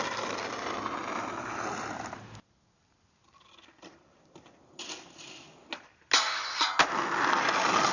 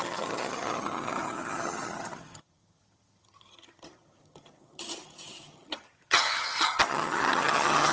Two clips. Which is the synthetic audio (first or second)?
second